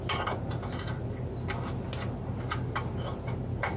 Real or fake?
real